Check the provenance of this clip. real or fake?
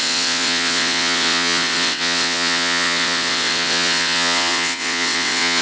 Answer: fake